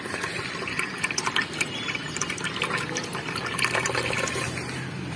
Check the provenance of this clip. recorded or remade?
remade